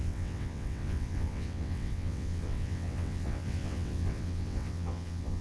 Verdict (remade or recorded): remade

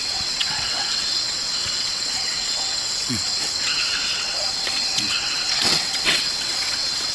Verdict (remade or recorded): remade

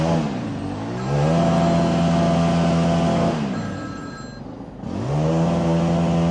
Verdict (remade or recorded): recorded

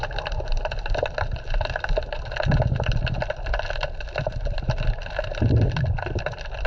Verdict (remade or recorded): recorded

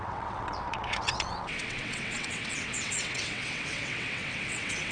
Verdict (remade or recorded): remade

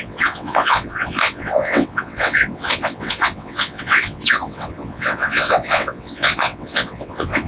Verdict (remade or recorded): remade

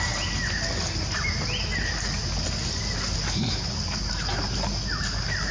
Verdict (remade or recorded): recorded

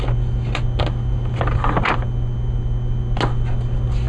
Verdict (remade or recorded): recorded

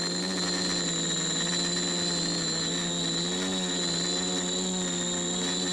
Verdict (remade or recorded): recorded